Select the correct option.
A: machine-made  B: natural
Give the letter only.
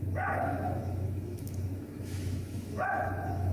A